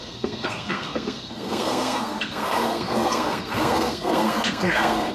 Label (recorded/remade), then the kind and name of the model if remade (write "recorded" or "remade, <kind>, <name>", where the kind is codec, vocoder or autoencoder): remade, codec, SNAC